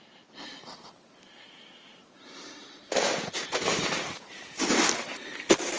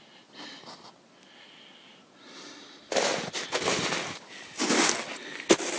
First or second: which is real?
second